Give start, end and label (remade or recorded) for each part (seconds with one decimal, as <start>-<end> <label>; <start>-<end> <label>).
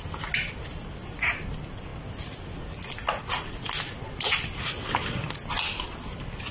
0.0-6.5 recorded